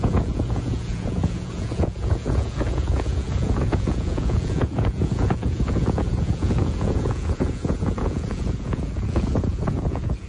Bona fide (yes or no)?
no